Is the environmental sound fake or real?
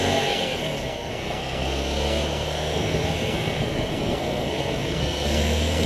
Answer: fake